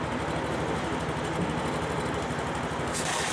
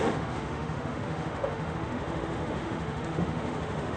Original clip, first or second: first